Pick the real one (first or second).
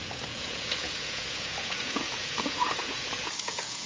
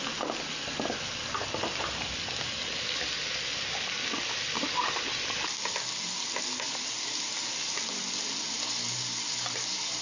second